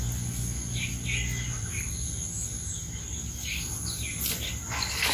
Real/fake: real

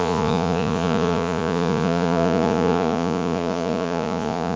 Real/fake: fake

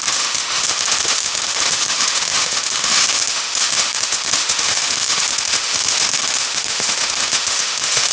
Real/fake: fake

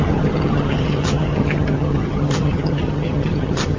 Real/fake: fake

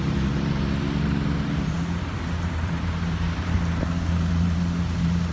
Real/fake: fake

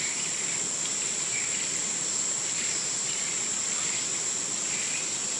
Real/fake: fake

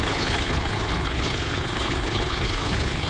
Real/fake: fake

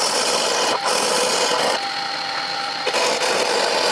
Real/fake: real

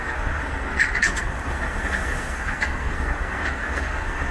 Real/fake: fake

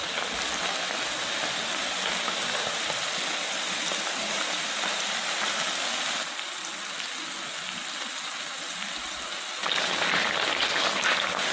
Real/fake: real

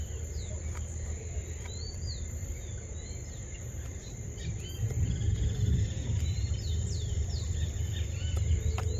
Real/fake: fake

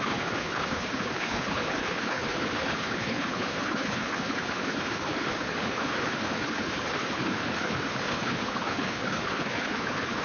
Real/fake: fake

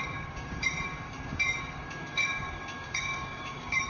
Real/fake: fake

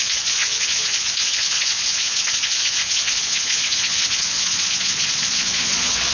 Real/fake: fake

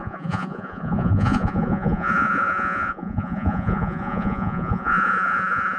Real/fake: fake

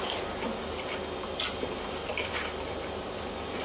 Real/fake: real